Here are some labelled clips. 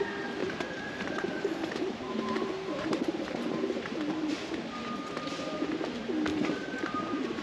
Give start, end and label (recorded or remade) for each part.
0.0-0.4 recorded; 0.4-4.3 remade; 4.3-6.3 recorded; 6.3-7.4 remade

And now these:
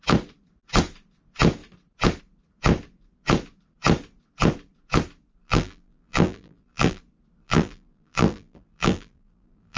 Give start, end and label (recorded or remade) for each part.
0.0-5.4 recorded; 5.4-7.0 remade; 7.0-7.4 recorded; 7.4-9.8 remade

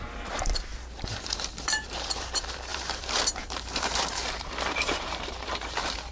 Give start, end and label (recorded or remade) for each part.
0.0-6.1 remade

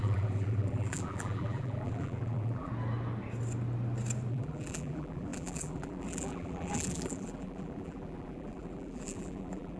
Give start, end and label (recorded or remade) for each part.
0.0-2.7 remade; 2.7-4.3 recorded; 4.3-9.8 remade

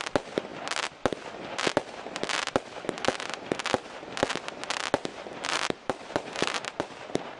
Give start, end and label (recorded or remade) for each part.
0.0-5.1 recorded; 5.1-7.4 remade

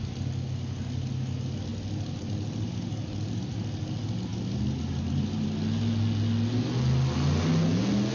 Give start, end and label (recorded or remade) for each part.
0.0-8.1 recorded

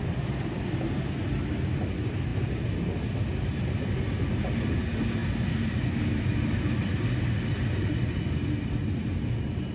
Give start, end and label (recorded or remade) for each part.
0.0-9.7 recorded

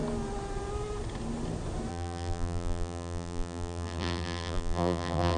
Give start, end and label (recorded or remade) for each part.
0.0-1.9 recorded; 1.9-5.4 remade